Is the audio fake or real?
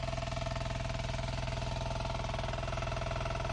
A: real